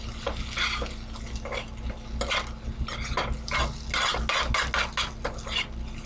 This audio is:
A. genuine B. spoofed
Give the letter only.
A